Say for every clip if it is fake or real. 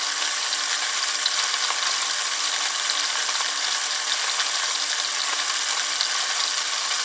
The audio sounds real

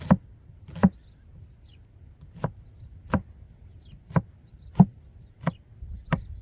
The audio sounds real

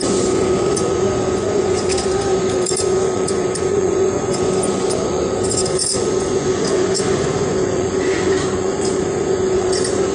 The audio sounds fake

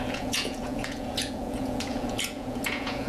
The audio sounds fake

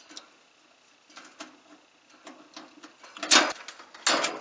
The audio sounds real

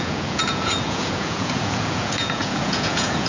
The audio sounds fake